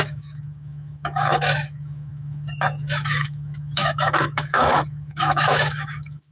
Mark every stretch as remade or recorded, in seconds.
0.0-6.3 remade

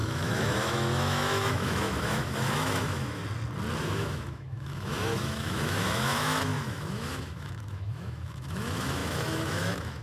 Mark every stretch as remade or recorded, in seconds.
0.0-3.2 remade; 3.2-3.8 recorded; 3.8-10.0 remade

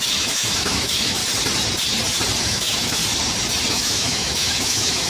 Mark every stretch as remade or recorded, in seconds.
0.0-1.2 remade; 1.2-2.4 recorded; 2.4-3.0 remade; 3.0-3.7 recorded; 3.7-5.1 remade

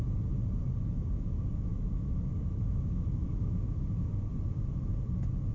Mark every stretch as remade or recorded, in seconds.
0.0-1.7 recorded; 1.7-4.1 remade; 4.1-5.5 recorded

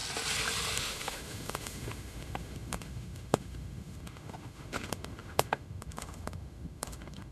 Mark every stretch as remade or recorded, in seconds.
0.0-0.8 recorded; 0.8-7.3 remade

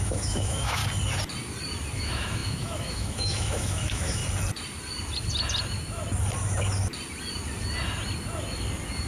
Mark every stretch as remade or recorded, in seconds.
0.0-0.8 remade; 0.8-2.0 recorded; 2.0-4.2 remade; 4.2-9.1 recorded